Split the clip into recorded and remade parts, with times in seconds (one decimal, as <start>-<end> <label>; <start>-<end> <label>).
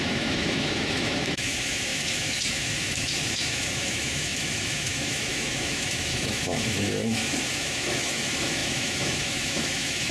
0.0-10.1 remade